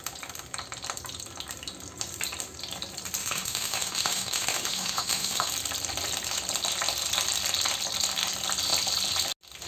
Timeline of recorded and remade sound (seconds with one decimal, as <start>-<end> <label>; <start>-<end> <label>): 0.0-3.2 recorded; 3.2-5.5 remade; 5.5-9.7 recorded